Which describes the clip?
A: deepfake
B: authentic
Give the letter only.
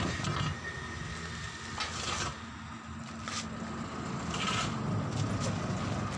B